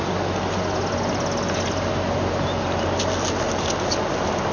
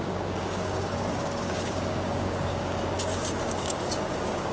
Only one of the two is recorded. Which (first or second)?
first